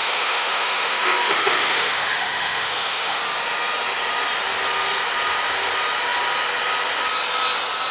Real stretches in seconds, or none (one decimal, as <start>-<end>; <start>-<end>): 3.2-7.9